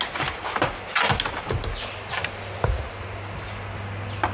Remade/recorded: recorded